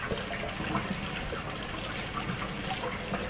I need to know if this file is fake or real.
real